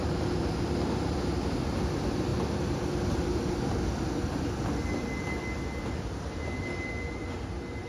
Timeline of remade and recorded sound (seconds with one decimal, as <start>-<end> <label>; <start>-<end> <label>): 0.0-7.9 recorded